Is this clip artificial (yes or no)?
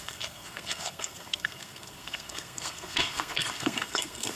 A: yes